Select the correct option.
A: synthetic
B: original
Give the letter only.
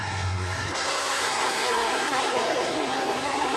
A